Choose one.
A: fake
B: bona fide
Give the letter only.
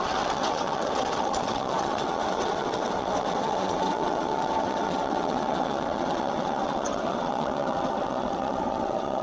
A